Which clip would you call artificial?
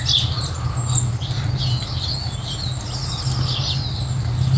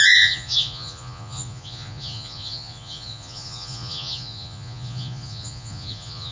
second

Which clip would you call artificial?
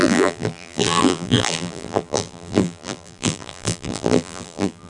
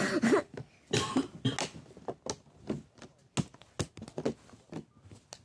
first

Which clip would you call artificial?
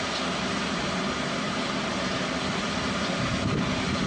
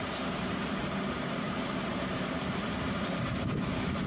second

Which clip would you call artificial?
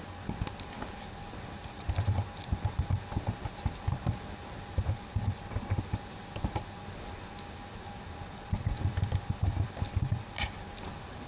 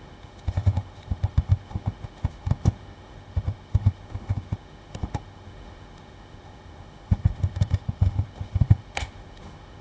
second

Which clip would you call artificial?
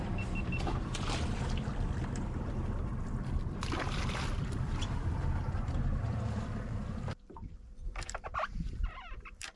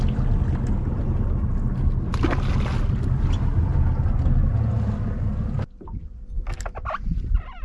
first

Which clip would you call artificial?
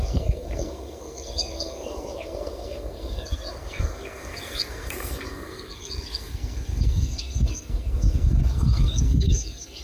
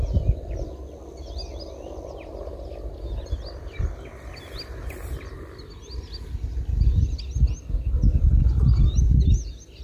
first